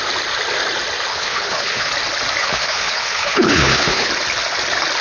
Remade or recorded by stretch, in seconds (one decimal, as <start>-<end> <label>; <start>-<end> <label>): 0.0-1.1 recorded; 1.1-1.9 remade; 1.9-2.4 recorded; 2.4-4.1 remade; 4.1-5.0 recorded